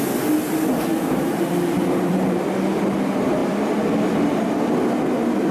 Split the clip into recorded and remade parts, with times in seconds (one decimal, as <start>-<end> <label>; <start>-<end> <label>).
0.0-0.9 recorded; 0.9-2.5 remade; 2.5-5.5 recorded